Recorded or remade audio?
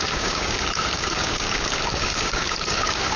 remade